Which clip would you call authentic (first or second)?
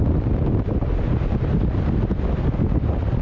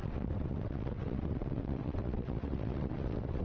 first